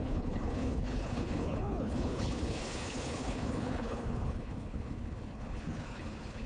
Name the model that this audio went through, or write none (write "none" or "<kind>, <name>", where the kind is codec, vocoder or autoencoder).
codec, HILCodec